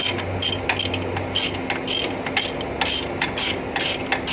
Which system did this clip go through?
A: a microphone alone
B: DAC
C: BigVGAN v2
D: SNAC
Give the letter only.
A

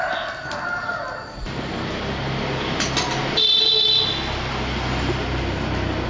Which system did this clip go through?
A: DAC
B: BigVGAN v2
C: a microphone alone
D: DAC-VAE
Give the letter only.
C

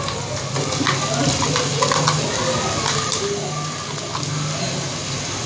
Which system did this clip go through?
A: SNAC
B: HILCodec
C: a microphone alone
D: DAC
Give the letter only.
C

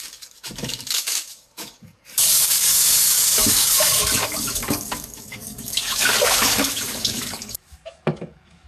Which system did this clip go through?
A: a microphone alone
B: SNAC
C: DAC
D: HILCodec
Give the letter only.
C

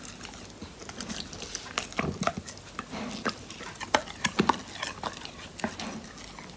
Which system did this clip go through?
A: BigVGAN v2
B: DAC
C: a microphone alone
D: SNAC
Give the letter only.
C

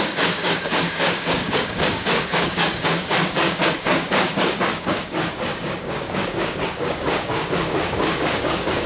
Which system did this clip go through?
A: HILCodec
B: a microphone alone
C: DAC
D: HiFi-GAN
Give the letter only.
C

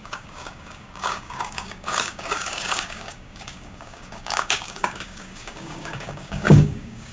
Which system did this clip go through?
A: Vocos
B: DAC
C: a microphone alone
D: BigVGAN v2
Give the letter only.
B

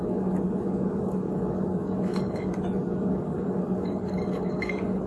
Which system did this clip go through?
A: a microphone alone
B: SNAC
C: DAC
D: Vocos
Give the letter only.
C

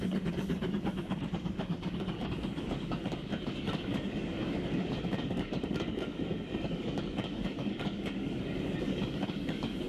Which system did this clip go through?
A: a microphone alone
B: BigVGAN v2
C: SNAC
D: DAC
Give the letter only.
D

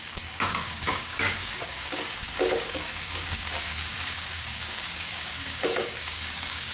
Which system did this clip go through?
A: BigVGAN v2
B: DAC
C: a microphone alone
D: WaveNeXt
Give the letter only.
B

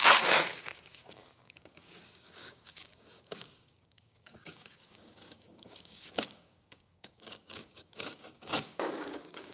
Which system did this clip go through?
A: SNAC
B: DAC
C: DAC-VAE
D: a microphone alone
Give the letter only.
B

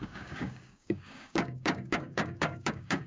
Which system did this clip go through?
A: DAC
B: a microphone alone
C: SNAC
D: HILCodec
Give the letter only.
A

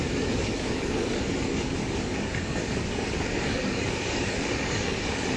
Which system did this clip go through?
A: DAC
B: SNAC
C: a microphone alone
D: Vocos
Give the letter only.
A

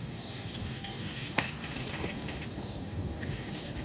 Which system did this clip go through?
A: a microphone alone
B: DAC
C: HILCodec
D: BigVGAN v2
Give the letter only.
B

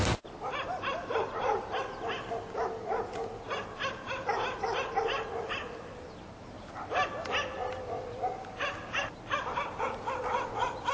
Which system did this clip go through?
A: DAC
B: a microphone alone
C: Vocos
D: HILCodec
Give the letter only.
B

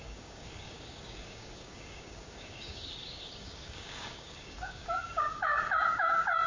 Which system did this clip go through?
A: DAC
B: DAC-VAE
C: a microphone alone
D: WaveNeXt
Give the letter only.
A